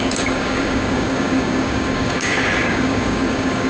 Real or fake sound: fake